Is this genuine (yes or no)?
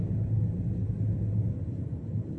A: yes